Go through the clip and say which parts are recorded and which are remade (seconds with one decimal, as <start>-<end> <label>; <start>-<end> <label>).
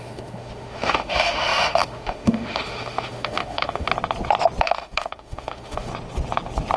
0.0-3.9 remade; 3.9-4.6 recorded; 4.6-5.9 remade; 5.9-6.8 recorded